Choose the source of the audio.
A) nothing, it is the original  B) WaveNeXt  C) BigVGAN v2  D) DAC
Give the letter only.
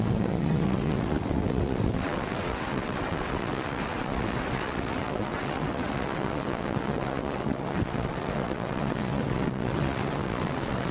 B